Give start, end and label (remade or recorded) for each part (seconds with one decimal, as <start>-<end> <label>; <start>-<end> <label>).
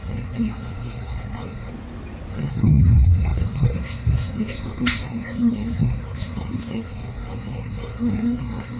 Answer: 0.0-1.7 remade; 1.7-2.3 recorded; 2.3-8.8 remade